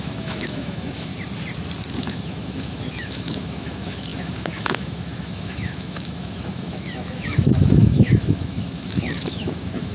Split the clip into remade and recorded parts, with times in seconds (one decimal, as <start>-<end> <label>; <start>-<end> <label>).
0.0-1.1 remade; 1.1-1.9 recorded; 1.9-9.9 remade